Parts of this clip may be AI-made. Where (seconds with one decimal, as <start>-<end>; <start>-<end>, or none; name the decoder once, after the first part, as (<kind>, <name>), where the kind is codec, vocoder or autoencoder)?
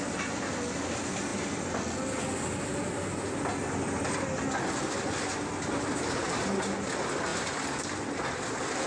none